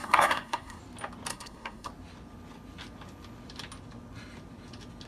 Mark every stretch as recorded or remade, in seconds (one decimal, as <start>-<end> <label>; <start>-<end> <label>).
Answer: 0.0-0.8 remade; 0.8-1.3 recorded; 1.3-1.9 remade; 1.9-5.1 recorded